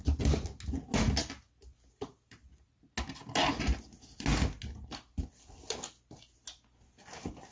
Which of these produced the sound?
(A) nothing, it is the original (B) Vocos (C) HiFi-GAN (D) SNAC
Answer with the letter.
A